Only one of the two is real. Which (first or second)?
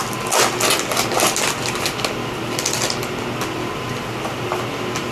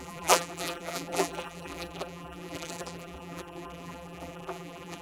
first